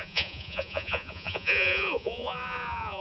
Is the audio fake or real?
fake